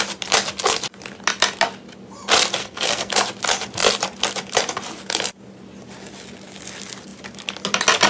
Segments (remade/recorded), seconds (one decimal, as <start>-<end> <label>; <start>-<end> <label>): 0.0-2.6 recorded; 2.6-3.1 remade; 3.1-8.1 recorded